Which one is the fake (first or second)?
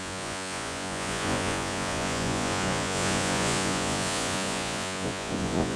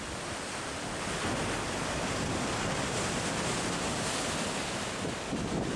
first